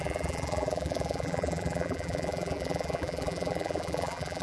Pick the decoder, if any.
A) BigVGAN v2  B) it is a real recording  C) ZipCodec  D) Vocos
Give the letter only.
A